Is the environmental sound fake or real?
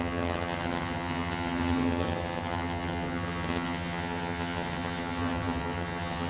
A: fake